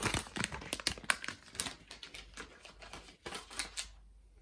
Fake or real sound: real